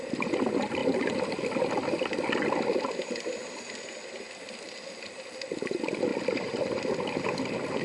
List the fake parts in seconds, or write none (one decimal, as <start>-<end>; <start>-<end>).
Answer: 0.0-0.8; 5.5-7.8